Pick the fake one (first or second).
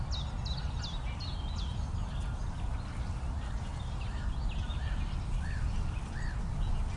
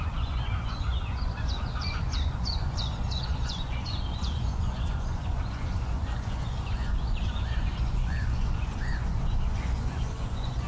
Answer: second